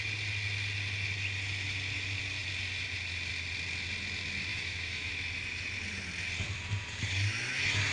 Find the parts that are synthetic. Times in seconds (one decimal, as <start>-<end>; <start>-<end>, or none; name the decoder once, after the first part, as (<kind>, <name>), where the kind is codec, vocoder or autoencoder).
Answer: 4.5-5.1 (autoencoder, DAC-VAE)